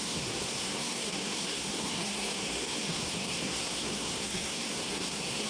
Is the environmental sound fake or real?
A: fake